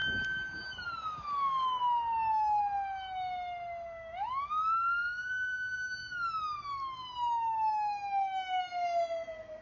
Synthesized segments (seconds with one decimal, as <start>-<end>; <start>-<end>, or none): none